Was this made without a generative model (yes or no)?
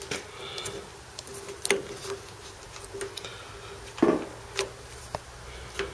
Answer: yes